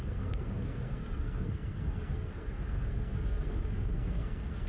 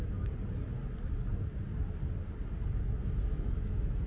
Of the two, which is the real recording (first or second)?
second